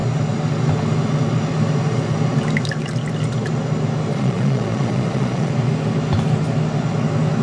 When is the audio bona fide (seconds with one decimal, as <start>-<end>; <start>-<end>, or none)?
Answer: 0.0-4.1; 5.5-7.4